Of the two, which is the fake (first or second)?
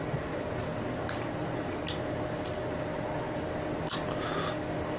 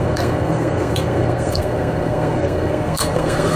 second